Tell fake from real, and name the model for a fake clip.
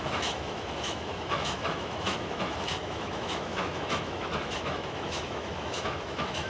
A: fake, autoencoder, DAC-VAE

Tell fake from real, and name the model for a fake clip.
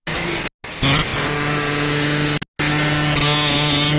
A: real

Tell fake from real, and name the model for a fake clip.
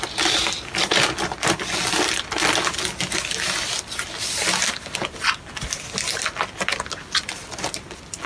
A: real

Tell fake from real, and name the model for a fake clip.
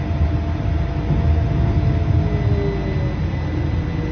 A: real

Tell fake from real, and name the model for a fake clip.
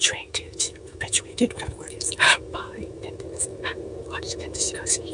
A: fake, autoencoder, DAC-VAE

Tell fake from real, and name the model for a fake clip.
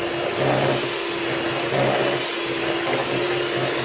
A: real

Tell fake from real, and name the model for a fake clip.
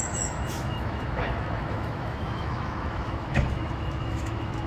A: fake, autoencoder, DAC-VAE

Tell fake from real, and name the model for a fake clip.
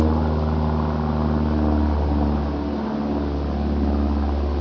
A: real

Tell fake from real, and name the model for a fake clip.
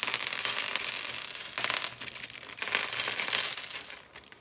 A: real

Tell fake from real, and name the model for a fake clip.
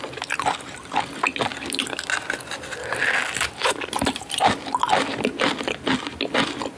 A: real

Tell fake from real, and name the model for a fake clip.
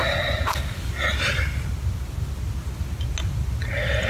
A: real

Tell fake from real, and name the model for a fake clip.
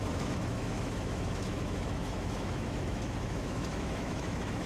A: fake, autoencoder, DAC-VAE